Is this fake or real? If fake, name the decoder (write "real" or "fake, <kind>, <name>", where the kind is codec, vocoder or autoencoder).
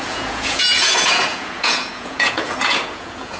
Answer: fake, vocoder, Vocos